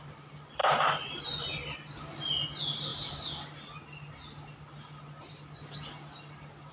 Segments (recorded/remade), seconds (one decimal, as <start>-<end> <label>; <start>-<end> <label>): 0.0-0.6 recorded; 0.6-1.2 remade; 1.2-2.9 recorded; 2.9-6.7 remade